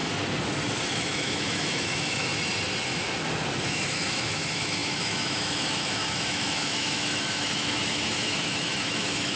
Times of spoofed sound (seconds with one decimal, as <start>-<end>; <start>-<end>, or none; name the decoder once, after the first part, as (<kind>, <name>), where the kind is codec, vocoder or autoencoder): 0.9-2.3 (autoencoder, DAC-VAE); 3.7-9.4